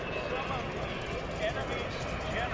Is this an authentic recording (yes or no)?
yes